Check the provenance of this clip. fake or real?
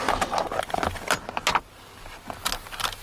real